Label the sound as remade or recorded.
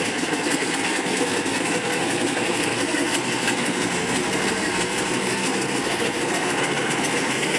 remade